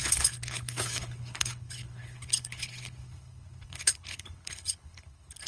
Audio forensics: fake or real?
fake